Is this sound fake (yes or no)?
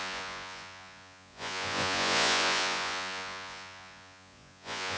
yes